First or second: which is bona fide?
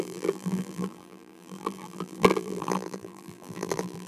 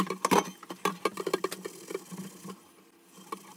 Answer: second